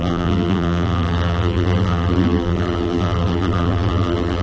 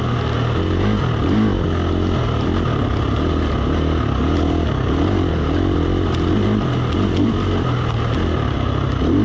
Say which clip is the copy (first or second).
first